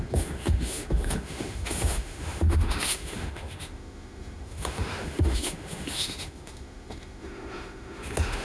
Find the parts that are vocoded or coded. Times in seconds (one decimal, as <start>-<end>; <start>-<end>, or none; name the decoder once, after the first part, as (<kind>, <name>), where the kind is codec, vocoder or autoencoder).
0.0-8.4 (autoencoder, DAC-VAE)